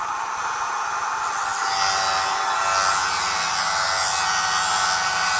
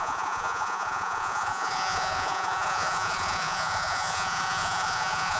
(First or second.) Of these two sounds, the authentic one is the first